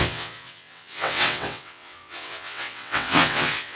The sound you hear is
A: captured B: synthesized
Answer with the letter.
B